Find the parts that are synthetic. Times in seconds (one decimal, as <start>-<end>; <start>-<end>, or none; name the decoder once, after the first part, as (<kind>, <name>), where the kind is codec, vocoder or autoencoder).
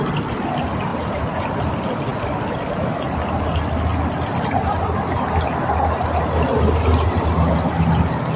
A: 0.9-1.6 (vocoder, BigVGAN v2)